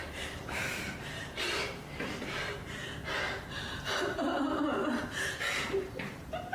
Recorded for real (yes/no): no